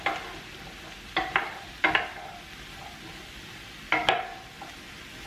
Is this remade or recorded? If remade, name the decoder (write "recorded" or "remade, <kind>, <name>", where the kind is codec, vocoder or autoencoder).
recorded